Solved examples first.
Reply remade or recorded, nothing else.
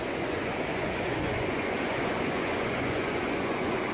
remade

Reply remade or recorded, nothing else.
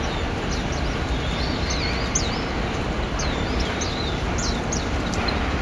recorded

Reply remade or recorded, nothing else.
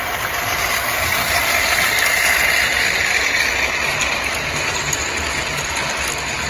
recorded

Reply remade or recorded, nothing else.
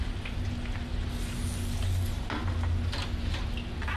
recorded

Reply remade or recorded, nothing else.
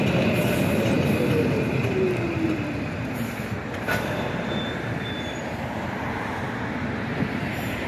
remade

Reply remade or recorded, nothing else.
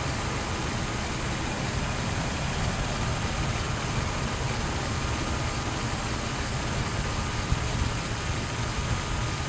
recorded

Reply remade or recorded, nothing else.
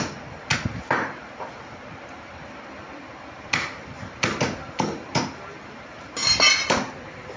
recorded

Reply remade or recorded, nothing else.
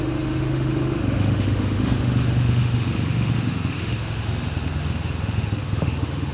remade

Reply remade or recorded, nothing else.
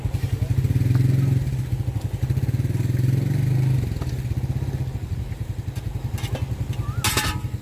recorded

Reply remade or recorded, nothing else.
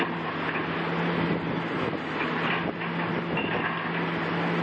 recorded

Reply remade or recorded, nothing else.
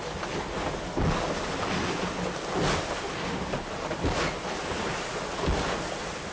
recorded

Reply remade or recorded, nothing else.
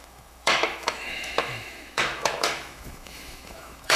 remade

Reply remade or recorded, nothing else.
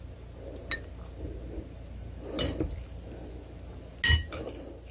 recorded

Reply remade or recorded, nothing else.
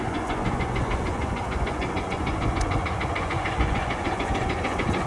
remade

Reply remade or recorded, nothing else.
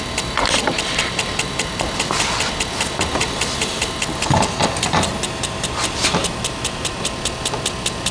recorded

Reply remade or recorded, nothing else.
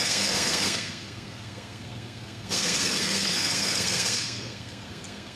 remade